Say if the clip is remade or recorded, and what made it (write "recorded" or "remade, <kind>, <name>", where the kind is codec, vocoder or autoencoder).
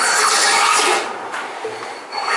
recorded